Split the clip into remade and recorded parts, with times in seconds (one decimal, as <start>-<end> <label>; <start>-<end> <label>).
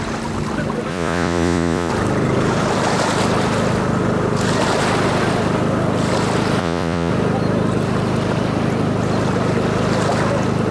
0.0-0.9 recorded; 0.9-1.9 remade; 1.9-6.6 recorded; 6.6-7.1 remade; 7.1-10.7 recorded